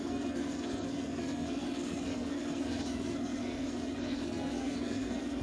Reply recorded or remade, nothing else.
remade